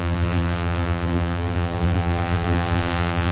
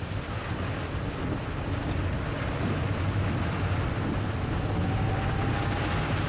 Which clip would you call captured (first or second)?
second